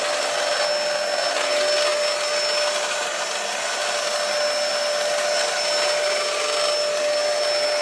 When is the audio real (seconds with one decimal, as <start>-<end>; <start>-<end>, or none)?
0.0-7.8